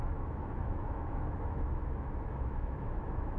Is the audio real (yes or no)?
no